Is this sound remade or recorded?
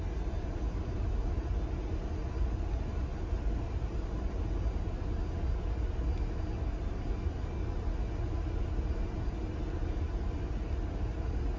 recorded